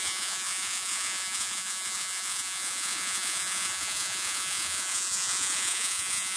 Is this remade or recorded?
remade